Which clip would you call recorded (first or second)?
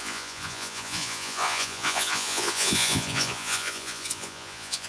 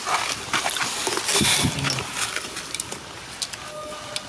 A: second